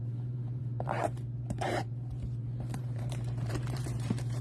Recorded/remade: remade